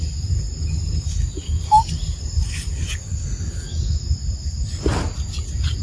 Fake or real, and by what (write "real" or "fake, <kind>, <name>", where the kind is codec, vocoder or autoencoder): real